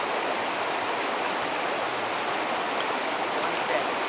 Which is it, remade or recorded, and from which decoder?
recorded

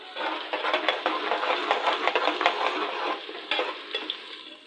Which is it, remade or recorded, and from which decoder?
recorded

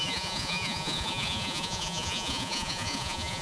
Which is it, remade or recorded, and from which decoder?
remade, vocoder, Vocos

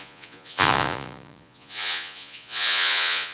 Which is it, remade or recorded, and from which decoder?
remade, vocoder, Vocos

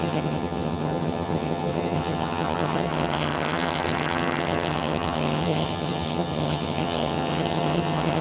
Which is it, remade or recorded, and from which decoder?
remade, vocoder, HiFi-GAN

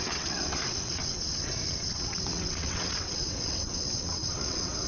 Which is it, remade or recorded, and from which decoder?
remade, vocoder, WaveNeXt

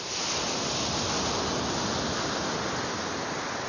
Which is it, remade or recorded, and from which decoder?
recorded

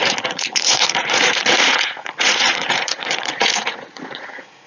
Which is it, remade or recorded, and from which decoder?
remade, vocoder, Vocos